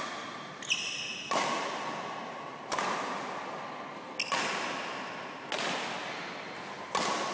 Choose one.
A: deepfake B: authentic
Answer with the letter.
B